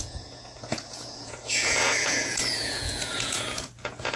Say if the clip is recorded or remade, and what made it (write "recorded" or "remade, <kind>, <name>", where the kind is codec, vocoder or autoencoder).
remade, vocoder, Vocos